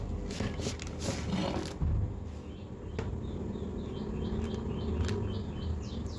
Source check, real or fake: real